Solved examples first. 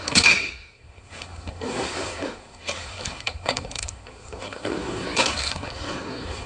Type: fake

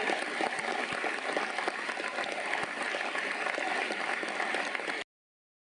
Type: real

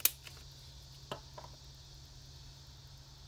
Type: real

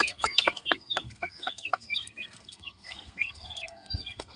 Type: fake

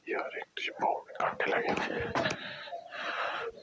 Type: real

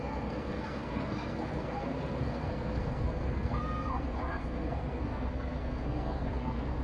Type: fake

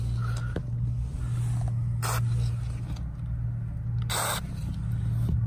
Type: real